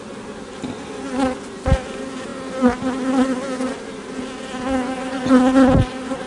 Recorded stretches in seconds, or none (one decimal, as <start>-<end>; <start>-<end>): 0.0-6.3